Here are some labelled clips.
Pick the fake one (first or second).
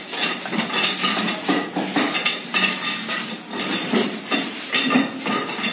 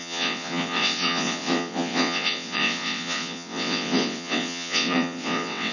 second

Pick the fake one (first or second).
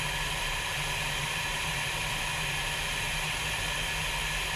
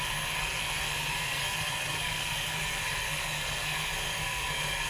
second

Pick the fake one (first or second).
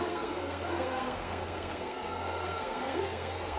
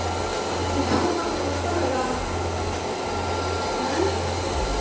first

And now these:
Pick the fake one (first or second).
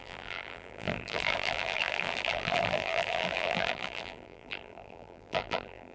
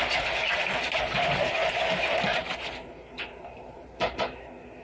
first